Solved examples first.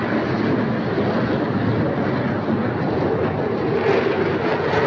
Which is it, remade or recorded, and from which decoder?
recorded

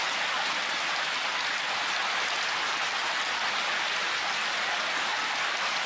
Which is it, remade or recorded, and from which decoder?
recorded